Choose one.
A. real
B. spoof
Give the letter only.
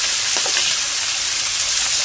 A